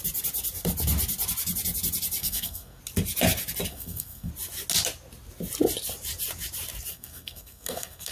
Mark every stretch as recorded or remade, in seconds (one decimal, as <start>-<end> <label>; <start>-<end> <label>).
0.0-2.2 recorded; 2.2-2.8 remade; 2.8-3.7 recorded; 3.7-4.3 remade; 4.3-6.9 recorded; 6.9-8.1 remade